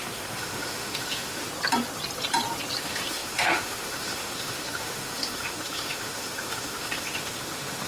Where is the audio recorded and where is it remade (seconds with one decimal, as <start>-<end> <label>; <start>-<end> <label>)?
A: 0.0-1.5 remade; 1.5-2.8 recorded; 2.8-7.9 remade